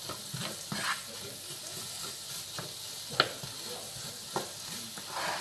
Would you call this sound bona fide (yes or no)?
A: yes